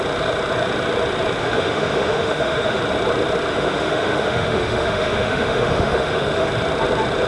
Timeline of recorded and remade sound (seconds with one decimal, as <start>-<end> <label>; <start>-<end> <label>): 0.0-1.4 recorded; 1.4-2.8 remade; 2.8-3.5 recorded; 3.5-6.5 remade; 6.5-7.3 recorded